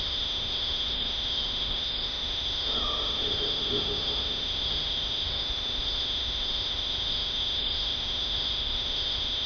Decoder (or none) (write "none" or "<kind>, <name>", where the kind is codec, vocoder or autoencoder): autoencoder, DAC-VAE